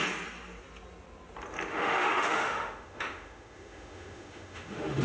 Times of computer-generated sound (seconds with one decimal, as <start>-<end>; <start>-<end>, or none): 1.7-5.0